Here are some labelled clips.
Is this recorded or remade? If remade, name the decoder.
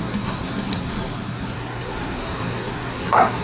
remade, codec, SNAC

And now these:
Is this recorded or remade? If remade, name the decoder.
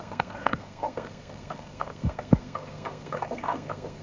remade, codec, SNAC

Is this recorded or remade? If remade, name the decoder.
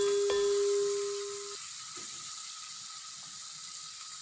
recorded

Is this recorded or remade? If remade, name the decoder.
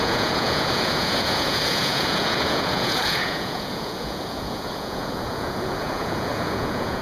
remade, vocoder, Vocos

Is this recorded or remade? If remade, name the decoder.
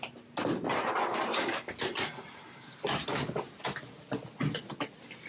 recorded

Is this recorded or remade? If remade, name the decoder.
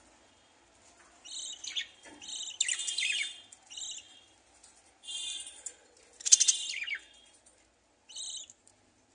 recorded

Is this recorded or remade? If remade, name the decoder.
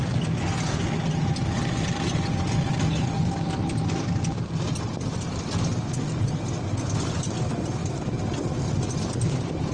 recorded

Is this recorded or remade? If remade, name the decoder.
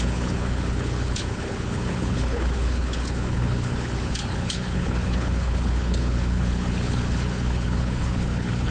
remade, codec, HILCodec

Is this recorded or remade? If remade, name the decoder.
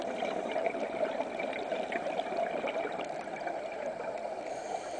remade, vocoder, BigVGAN v2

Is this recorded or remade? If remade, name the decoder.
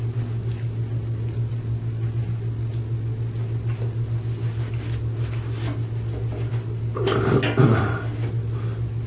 recorded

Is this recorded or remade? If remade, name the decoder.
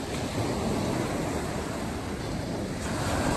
recorded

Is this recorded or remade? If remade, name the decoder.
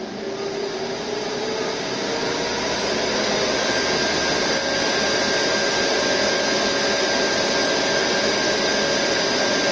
recorded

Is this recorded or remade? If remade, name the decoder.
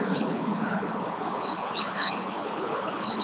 remade, codec, HILCodec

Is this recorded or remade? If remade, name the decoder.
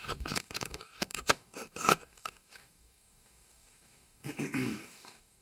remade, codec, DAC